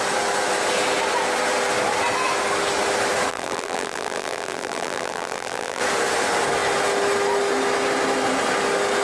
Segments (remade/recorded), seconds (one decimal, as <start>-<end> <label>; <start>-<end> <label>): 0.0-3.3 recorded; 3.3-5.8 remade; 5.8-9.0 recorded